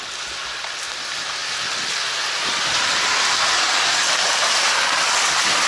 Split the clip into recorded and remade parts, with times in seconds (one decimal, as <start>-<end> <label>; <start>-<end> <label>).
0.0-5.7 recorded